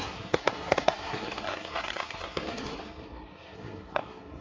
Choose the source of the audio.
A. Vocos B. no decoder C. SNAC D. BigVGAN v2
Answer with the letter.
C